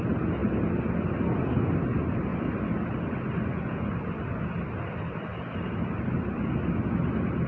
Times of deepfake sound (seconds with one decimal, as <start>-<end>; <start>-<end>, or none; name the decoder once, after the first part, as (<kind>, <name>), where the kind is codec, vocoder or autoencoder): none